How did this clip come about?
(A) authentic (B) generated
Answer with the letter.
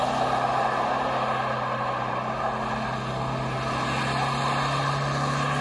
A